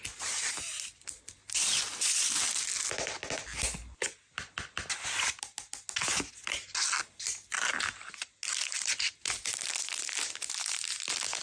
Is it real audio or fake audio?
real